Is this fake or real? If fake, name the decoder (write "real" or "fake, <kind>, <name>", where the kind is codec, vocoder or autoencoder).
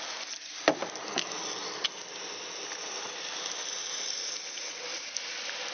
real